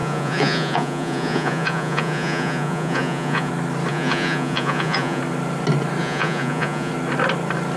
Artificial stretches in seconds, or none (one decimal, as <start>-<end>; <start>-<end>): 0.0-3.5; 3.9-5.2; 6.0-6.9